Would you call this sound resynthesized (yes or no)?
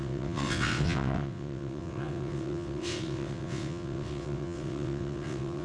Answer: yes